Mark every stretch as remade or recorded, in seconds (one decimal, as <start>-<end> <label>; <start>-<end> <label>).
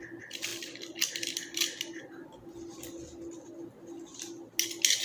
0.0-5.0 recorded